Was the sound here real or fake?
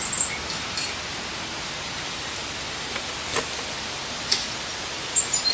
real